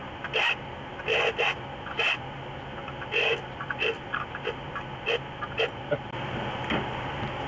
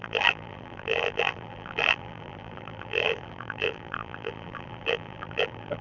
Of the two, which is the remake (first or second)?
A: second